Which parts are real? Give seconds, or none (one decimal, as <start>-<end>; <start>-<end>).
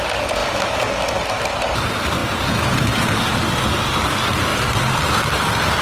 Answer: 0.0-2.2; 3.1-5.8